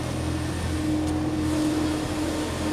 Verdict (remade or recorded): recorded